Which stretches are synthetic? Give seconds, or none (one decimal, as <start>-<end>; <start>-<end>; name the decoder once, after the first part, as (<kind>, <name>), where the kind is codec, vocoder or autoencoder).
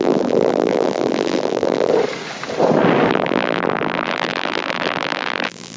0.0-1.9 (vocoder, BigVGAN v2); 3.1-5.8